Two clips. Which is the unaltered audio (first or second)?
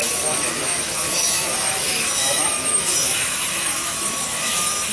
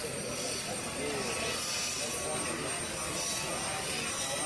second